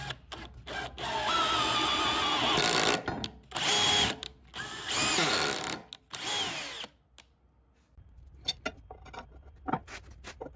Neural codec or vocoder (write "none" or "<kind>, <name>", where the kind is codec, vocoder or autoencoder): none